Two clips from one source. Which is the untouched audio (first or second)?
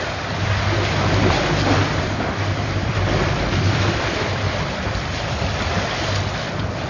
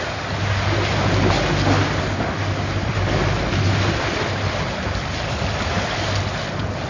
second